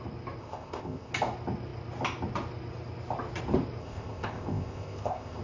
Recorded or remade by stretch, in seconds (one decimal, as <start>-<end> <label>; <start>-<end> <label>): 0.0-0.4 recorded; 0.4-1.1 remade; 1.1-3.8 recorded; 3.8-5.4 remade